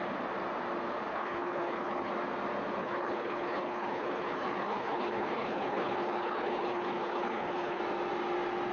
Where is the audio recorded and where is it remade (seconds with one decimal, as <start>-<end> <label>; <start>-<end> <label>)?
0.0-1.1 recorded; 1.1-2.1 remade; 2.1-2.8 recorded; 2.8-7.8 remade; 7.8-8.7 recorded